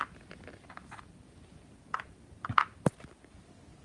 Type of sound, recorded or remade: recorded